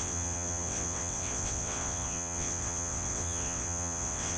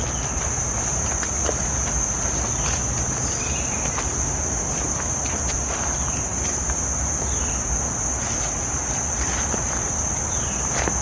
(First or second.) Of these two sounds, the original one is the second